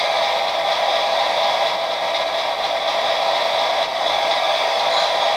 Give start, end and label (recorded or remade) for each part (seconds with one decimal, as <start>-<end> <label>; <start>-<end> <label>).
0.0-3.9 recorded; 3.9-4.8 remade; 4.8-5.4 recorded